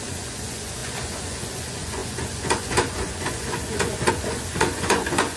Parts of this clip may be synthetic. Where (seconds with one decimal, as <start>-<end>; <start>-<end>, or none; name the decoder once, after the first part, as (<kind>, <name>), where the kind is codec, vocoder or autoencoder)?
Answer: 0.0-5.4 (vocoder, Vocos)